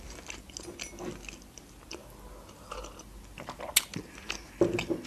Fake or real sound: real